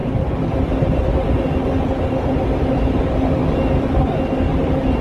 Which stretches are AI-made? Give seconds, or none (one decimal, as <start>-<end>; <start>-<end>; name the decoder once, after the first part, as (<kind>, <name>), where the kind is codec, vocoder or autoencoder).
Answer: none